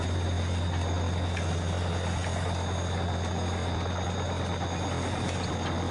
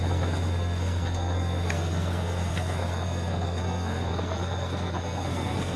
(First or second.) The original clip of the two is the first